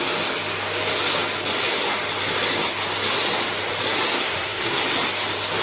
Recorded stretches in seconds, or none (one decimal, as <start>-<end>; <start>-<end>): 0.0-4.2; 4.8-5.6